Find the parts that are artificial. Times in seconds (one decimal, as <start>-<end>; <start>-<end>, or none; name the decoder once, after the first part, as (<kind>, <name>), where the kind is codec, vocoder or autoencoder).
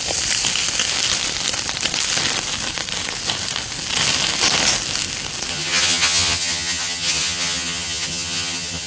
5.5-8.9 (vocoder, HiFi-GAN)